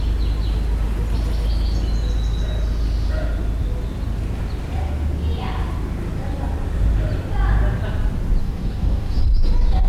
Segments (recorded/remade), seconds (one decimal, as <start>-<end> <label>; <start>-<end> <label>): 0.0-8.4 recorded; 8.4-9.2 remade; 9.2-9.9 recorded